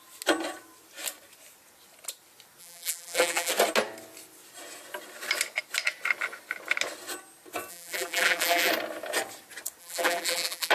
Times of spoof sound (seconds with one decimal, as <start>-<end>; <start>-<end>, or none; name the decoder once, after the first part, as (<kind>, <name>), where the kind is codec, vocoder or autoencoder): 2.6-3.5 (vocoder, BigVGAN v2); 7.7-8.7; 9.8-10.7